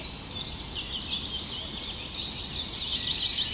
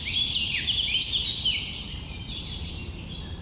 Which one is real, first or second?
first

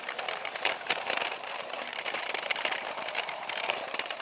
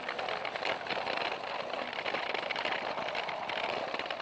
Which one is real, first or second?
second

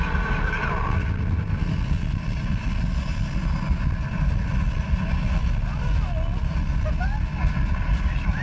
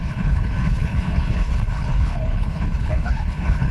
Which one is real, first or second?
first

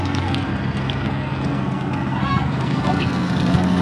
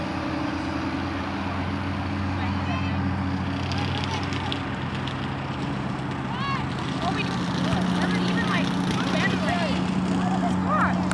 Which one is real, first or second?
second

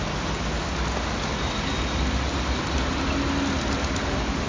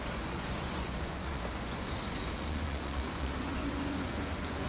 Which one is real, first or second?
first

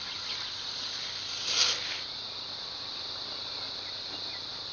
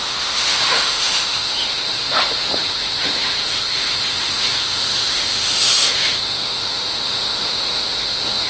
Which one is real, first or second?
first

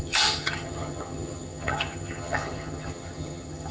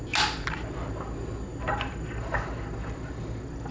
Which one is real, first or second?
second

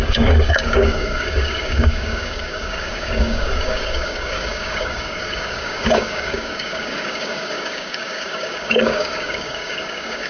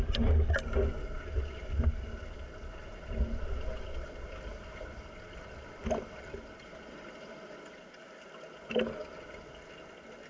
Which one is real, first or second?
second